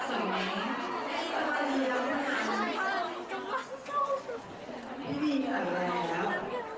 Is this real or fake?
real